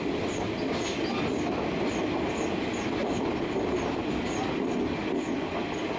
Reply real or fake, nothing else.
real